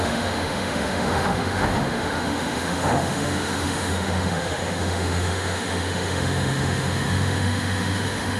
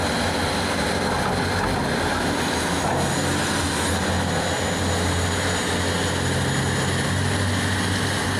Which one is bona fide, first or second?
second